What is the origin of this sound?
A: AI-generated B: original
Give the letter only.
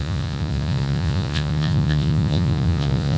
A